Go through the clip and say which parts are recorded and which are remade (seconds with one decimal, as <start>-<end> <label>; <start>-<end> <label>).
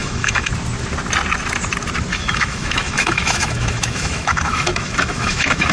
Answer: 0.0-0.5 remade; 0.5-2.1 recorded; 2.1-5.7 remade